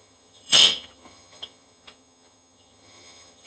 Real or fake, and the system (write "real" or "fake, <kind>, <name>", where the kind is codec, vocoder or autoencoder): fake, vocoder, HiFi-GAN